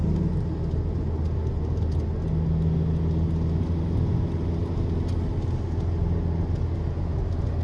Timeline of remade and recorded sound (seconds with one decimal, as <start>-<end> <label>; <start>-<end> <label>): 0.0-7.6 recorded